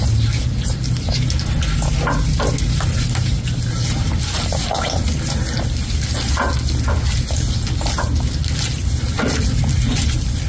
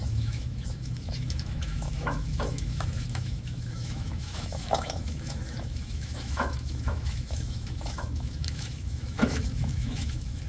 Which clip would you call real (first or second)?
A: first